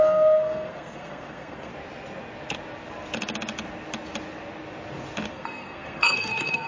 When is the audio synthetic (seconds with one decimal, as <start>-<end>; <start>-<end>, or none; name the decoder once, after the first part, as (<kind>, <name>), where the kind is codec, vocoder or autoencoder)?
0.0-1.7 (codec, SNAC); 5.3-6.7